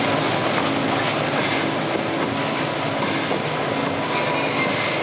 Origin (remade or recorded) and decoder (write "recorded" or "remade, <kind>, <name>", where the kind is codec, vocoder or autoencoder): recorded